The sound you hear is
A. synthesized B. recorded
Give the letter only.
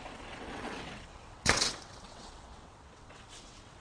A